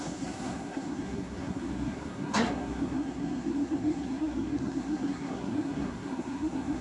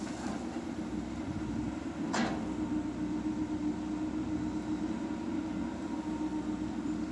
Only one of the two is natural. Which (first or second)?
second